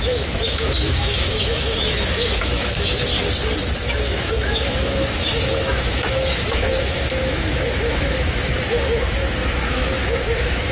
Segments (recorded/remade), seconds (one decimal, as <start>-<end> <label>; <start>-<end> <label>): 0.0-3.1 remade; 3.1-3.8 recorded; 3.8-10.7 remade